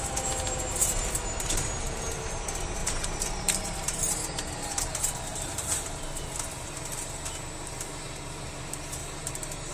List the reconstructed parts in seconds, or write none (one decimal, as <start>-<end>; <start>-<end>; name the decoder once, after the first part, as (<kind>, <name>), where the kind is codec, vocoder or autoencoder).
2.8-6.0 (vocoder, BigVGAN v2); 9.0-9.7

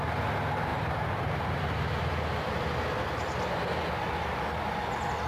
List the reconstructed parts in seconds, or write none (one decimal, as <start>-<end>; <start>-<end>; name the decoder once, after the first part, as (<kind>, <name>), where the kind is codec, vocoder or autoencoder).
0.7-3.8 (vocoder, BigVGAN v2)

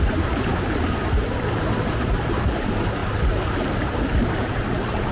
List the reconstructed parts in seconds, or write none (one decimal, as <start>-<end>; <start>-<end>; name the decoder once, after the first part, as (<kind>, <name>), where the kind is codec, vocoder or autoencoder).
0.0-5.1 (vocoder, BigVGAN v2)

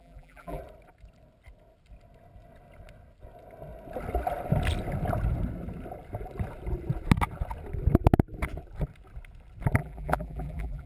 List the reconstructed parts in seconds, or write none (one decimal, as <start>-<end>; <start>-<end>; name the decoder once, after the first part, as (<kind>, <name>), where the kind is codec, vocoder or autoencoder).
0.0-0.6 (vocoder, BigVGAN v2); 9.8-10.9

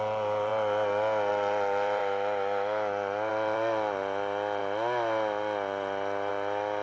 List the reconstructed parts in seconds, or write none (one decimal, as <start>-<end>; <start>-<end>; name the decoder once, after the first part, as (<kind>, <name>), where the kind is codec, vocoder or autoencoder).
0.0-0.5 (vocoder, BigVGAN v2); 1.3-2.0; 3.3-4.6; 6.3-6.8